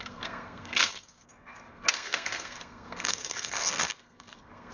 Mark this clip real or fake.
fake